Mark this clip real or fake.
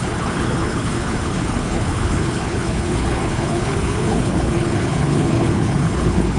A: fake